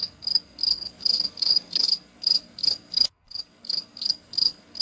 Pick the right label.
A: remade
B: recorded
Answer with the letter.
A